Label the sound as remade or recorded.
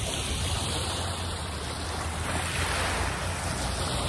recorded